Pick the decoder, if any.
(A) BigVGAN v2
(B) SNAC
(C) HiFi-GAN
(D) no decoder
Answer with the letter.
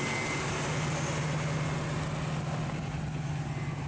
D